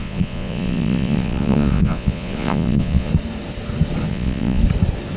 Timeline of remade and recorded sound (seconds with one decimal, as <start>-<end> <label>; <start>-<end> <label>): 0.0-3.1 remade; 3.1-4.1 recorded; 4.1-4.6 remade; 4.6-5.2 recorded